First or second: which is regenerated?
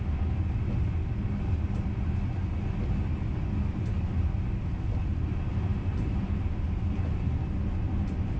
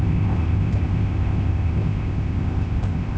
second